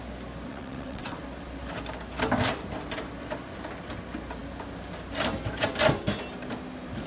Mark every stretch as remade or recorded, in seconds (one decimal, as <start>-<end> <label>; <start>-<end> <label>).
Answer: 0.0-0.5 recorded; 0.5-1.2 remade; 1.2-7.1 recorded